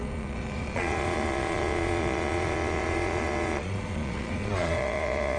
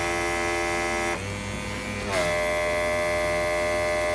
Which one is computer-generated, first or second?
first